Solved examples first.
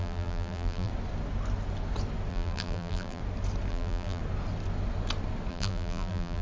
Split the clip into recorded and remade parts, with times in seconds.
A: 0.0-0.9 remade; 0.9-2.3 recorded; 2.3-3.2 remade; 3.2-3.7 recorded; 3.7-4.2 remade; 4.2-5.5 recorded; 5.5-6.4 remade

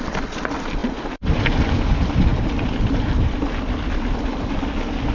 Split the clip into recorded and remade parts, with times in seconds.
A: 0.0-5.1 recorded

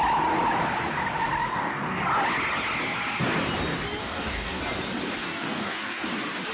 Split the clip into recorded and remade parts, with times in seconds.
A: 0.0-1.5 recorded; 1.5-2.0 remade; 2.0-4.0 recorded; 4.0-4.6 remade; 4.6-5.2 recorded; 5.2-6.0 remade; 6.0-6.5 recorded